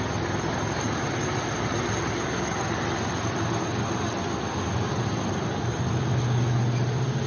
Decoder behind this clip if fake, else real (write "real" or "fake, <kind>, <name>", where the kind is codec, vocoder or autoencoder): real